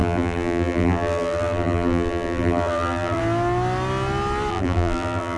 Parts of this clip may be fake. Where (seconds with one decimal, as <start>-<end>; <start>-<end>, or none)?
0.0-3.2; 4.5-5.4